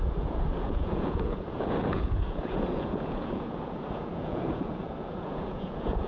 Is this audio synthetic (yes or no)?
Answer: yes